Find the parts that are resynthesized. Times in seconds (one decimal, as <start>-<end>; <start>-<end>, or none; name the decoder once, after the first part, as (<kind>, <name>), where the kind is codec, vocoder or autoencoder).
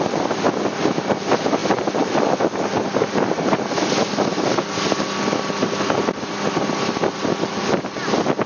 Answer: none